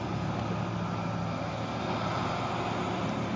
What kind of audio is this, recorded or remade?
recorded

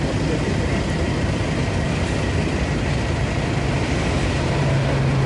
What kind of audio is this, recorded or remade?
recorded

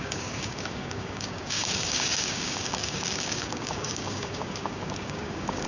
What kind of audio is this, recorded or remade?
remade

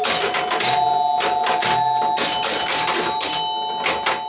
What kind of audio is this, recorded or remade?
recorded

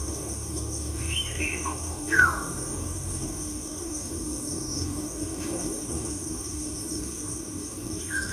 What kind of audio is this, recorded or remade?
remade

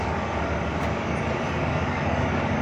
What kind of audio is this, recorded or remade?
remade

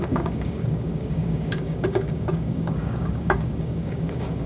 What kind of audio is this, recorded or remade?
remade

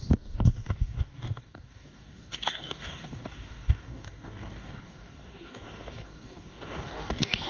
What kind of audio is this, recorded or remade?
remade